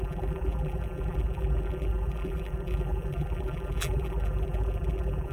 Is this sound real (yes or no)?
no